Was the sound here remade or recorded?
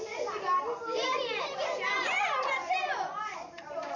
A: recorded